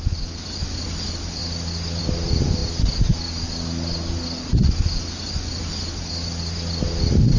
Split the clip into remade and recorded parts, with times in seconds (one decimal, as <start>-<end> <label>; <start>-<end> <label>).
0.0-7.4 recorded